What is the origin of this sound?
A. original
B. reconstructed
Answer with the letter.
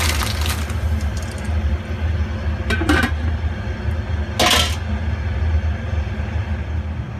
A